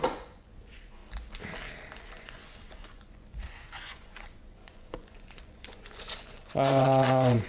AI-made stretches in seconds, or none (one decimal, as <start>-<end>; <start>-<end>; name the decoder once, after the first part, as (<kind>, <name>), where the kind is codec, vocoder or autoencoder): 0.0-1.0 (vocoder, Vocos); 2.0-7.5